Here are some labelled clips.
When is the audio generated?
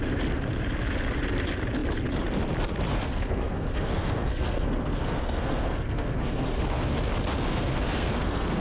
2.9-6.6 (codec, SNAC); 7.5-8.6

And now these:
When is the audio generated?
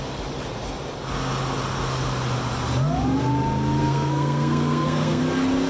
3.8-5.2 (codec, SNAC)